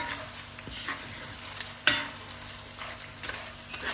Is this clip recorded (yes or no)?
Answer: yes